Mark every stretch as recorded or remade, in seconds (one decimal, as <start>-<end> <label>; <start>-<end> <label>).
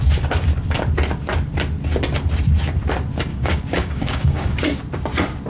0.0-3.3 recorded; 3.3-4.8 remade; 4.8-5.5 recorded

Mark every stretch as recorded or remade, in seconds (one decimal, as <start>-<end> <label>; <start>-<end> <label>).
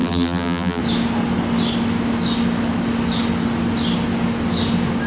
0.0-0.8 remade; 0.8-5.1 recorded